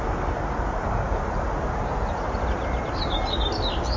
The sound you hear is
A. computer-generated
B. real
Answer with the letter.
B